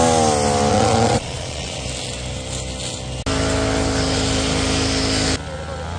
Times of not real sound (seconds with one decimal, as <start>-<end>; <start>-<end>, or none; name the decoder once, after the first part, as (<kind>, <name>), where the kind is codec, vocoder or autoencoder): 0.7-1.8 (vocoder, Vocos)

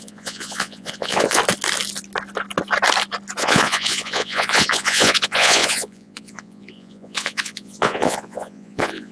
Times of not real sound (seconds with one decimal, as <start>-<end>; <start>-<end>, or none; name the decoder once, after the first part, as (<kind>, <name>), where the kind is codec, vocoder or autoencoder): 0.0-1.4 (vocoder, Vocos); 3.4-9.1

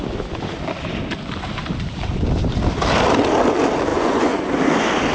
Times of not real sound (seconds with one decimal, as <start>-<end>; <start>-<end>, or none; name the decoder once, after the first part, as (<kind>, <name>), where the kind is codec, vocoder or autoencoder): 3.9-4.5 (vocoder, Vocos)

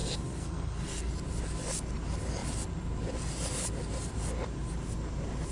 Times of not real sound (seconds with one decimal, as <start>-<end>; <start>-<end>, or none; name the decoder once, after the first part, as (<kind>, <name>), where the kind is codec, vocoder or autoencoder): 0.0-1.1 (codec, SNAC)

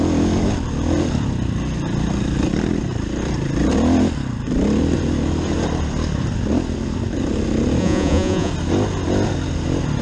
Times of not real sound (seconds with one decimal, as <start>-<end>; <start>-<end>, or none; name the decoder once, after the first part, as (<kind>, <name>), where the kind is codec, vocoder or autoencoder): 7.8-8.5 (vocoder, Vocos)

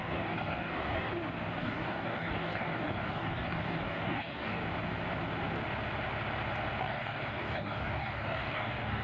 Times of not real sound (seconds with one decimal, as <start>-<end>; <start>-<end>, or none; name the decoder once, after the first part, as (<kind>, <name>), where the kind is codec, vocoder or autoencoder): 0.0-1.1 (codec, DAC); 1.6-4.6; 6.8-9.0

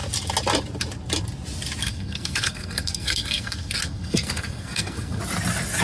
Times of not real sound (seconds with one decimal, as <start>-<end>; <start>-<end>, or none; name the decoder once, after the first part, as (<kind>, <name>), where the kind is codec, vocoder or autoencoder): 1.8-5.2 (codec, SNAC)

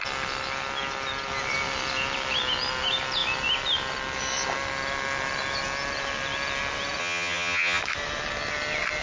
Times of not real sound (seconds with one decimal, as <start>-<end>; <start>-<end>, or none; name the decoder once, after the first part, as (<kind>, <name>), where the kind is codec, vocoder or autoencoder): 7.0-7.8 (vocoder, HiFi-GAN)